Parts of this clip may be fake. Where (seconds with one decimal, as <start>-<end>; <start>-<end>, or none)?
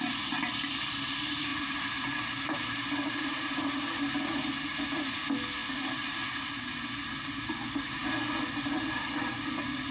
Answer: 1.5-3.6